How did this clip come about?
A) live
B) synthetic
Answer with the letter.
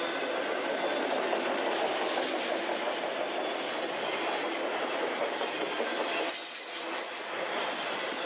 A